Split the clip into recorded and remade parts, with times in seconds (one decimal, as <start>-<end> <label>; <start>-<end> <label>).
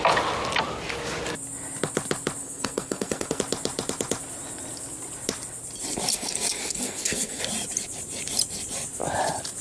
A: 0.0-2.4 recorded; 2.4-3.4 remade; 3.4-6.1 recorded; 6.1-7.4 remade; 7.4-9.6 recorded